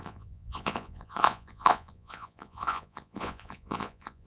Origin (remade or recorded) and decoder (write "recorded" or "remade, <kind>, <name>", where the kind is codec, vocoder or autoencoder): remade, vocoder, Vocos